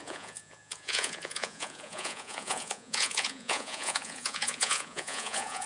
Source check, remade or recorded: remade